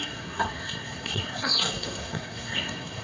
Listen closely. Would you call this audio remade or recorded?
remade